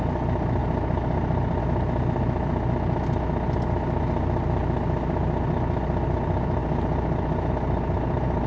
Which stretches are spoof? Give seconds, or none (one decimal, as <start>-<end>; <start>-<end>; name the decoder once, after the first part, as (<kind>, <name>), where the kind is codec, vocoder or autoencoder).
none